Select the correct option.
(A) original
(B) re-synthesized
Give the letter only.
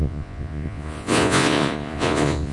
B